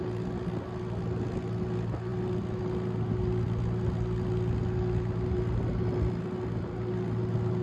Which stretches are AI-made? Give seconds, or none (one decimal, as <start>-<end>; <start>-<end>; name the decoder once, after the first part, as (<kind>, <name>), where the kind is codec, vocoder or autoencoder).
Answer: none